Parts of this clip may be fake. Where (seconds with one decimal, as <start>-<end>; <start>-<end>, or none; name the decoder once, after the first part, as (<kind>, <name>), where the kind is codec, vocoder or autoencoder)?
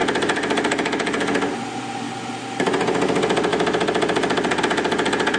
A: none